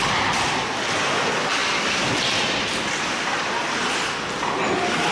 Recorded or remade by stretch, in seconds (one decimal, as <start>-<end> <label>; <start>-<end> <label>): 0.0-5.1 recorded